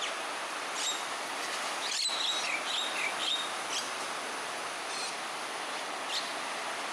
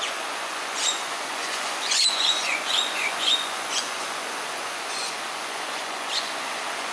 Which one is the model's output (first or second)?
second